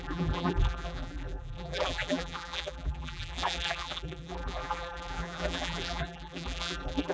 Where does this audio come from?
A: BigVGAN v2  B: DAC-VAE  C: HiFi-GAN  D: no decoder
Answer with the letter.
A